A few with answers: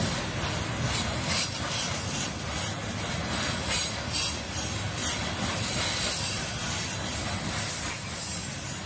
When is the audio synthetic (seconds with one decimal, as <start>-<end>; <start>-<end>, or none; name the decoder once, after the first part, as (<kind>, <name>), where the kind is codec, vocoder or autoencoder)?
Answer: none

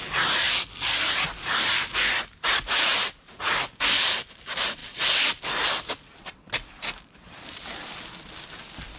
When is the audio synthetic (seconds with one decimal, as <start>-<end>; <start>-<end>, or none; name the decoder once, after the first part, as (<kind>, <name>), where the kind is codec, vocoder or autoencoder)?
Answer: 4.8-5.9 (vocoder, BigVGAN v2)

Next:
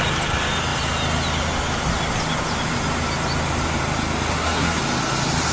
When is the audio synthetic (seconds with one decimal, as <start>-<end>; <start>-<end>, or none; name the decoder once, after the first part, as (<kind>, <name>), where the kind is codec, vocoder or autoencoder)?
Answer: 4.3-4.8 (codec, SNAC)